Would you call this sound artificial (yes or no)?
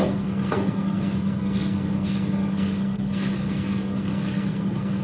yes